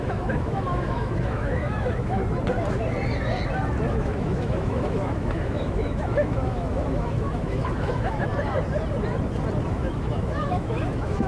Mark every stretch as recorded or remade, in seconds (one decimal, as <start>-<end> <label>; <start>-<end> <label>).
0.0-2.2 remade; 2.2-3.9 recorded; 3.9-8.3 remade; 8.3-9.7 recorded; 9.7-11.3 remade